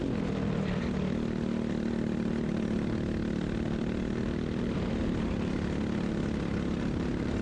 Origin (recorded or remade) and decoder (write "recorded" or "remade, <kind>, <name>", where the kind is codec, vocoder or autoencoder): recorded